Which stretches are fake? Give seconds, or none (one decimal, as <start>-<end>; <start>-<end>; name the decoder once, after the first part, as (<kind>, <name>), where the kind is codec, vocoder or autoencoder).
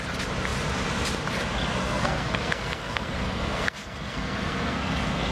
1.8-5.3 (codec, SNAC)